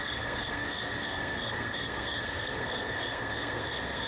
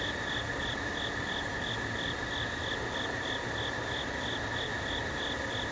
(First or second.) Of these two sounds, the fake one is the first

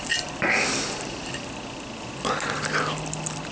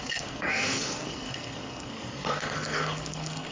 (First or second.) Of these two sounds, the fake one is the second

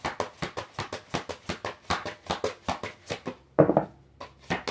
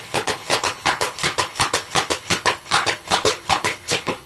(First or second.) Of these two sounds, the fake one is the second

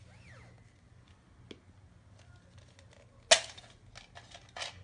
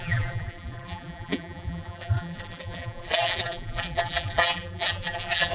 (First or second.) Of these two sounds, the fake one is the second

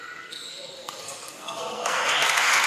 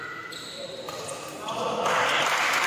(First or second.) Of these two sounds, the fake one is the first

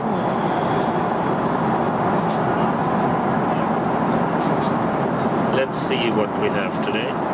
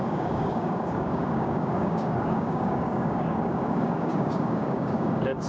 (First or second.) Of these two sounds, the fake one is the second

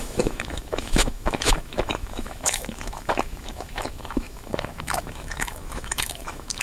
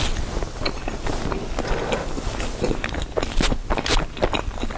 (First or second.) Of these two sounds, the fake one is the first